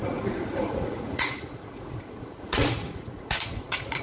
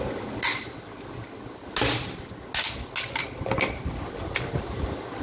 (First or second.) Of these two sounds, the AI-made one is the first